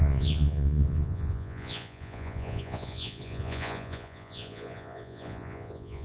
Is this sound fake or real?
fake